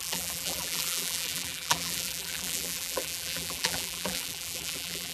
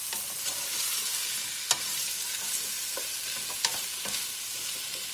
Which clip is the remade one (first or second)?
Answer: first